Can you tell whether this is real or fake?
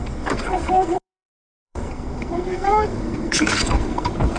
fake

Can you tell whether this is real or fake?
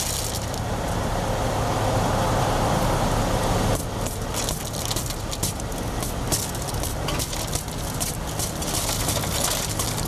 real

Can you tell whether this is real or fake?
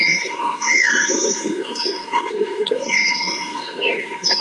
fake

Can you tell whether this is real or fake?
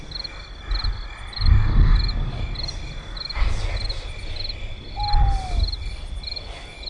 real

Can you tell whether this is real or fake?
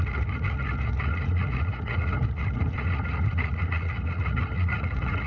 fake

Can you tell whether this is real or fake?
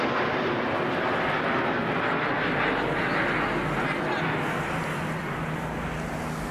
real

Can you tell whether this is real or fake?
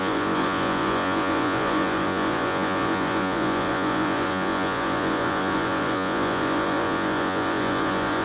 fake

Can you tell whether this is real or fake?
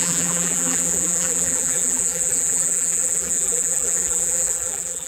fake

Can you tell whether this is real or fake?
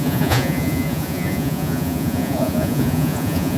fake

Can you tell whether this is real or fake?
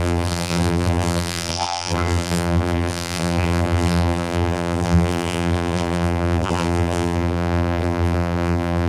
fake